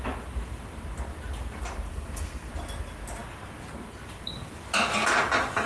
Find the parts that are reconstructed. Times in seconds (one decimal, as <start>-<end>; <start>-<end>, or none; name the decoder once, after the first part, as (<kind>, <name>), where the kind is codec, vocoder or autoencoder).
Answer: 1.9-2.5 (codec, SNAC)